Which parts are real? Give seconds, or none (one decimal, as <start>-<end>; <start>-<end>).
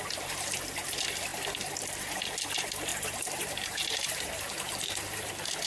0.0-2.9; 5.3-5.7